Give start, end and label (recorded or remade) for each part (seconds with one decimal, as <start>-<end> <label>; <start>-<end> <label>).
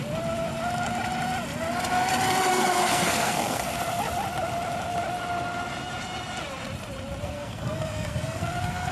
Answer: 0.0-2.5 recorded; 2.5-3.7 remade; 3.7-7.2 recorded; 7.2-8.9 remade